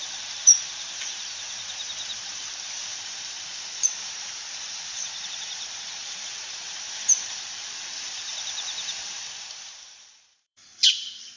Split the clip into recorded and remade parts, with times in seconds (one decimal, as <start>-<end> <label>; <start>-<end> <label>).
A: 0.0-11.4 remade